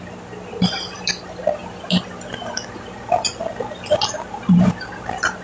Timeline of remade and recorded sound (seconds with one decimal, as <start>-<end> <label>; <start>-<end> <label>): 0.0-5.4 recorded

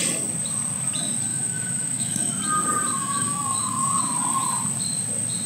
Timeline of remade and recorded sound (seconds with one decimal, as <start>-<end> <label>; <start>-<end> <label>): 0.0-1.3 recorded; 1.3-2.3 remade; 2.3-3.0 recorded; 3.0-4.0 remade; 4.0-5.5 recorded

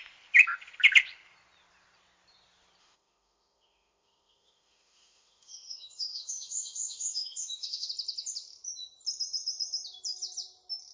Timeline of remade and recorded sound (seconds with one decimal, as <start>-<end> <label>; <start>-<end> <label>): 0.0-2.8 recorded; 2.8-7.9 remade; 7.9-10.9 recorded

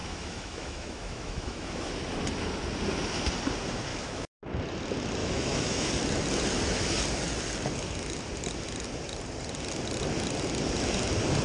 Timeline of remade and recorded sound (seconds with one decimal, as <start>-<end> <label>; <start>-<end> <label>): 0.0-1.9 remade; 1.9-3.9 recorded; 3.9-4.4 remade; 4.4-5.2 recorded; 5.2-5.9 remade; 5.9-11.4 recorded

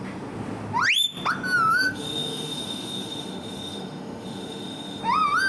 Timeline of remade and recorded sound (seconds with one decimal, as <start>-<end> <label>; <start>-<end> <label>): 0.0-1.7 recorded; 1.7-5.0 remade; 5.0-5.5 recorded